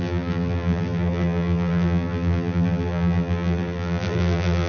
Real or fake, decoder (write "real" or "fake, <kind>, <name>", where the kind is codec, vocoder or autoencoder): fake, vocoder, BigVGAN v2